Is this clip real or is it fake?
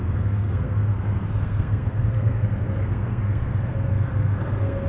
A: fake